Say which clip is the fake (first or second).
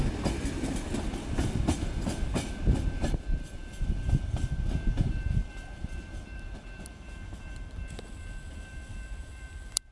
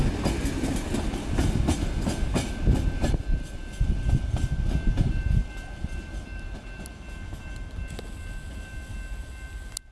first